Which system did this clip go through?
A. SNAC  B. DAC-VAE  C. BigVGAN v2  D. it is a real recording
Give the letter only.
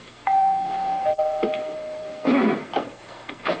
A